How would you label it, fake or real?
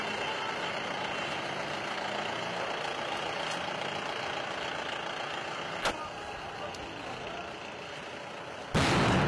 real